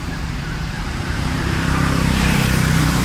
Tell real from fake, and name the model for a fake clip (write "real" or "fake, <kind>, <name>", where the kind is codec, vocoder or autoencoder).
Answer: fake, vocoder, BigVGAN v2